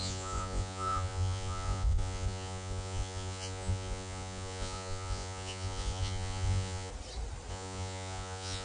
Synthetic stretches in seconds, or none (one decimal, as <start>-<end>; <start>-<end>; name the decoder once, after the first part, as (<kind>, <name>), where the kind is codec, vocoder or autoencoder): 0.0-6.9 (vocoder, Vocos); 7.5-8.6